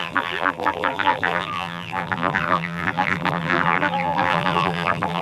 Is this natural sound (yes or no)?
no